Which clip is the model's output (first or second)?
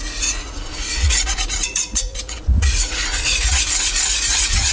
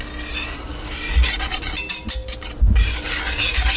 first